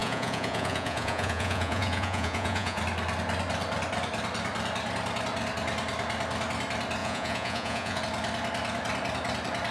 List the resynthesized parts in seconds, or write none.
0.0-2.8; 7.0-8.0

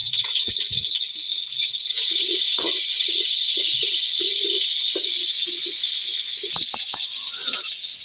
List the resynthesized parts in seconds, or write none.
0.0-0.5; 1.6-3.9